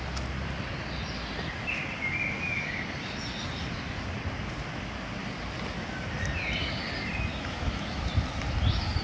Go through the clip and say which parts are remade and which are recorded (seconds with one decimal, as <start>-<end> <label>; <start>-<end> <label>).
0.0-7.3 recorded; 7.3-8.1 remade; 8.1-9.0 recorded